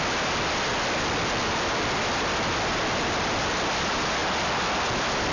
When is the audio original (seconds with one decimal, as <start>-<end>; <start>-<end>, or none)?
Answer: 0.0-5.3